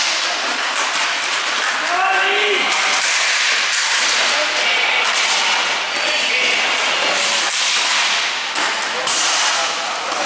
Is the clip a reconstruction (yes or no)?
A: no